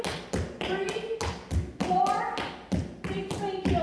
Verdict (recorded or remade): recorded